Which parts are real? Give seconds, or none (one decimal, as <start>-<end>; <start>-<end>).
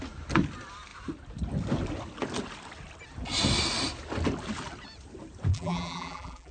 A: 0.0-5.5